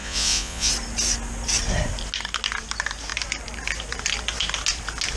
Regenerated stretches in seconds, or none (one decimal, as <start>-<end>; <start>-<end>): 0.0-0.7